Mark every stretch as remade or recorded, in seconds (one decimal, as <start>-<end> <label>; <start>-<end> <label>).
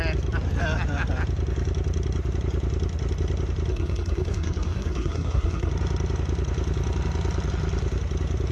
0.0-3.7 recorded; 3.7-5.7 remade; 5.7-8.5 recorded